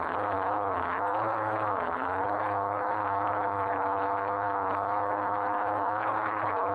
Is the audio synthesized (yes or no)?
yes